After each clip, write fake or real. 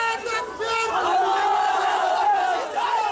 real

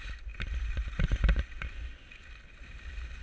real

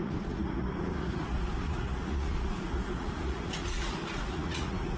fake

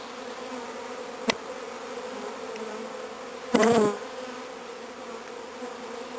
real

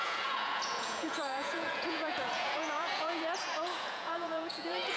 fake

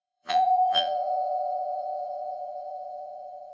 fake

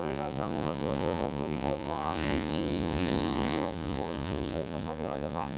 fake